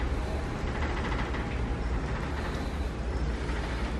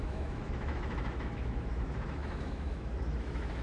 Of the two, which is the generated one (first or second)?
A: second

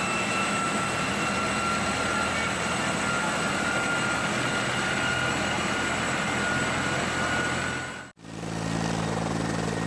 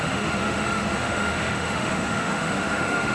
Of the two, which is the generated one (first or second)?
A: second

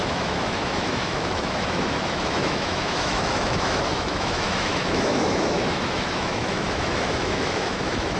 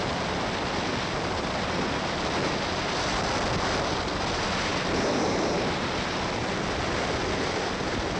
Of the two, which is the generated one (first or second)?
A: first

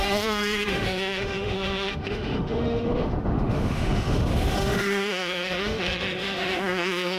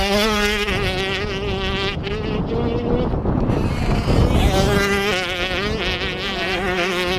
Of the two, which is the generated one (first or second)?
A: first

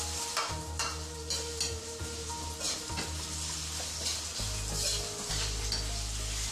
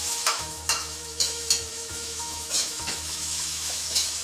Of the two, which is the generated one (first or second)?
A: second